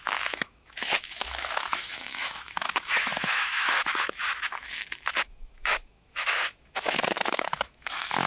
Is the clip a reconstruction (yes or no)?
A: yes